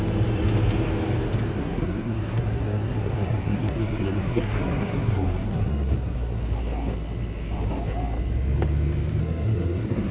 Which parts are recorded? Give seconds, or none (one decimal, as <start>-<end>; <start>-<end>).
0.0-1.6; 6.4-9.2